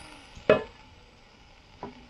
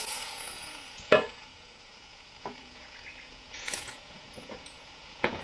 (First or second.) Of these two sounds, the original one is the first